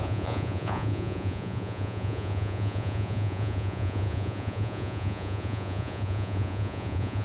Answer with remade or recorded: remade